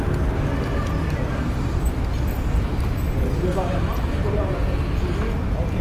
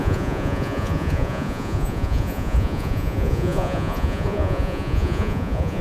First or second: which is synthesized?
second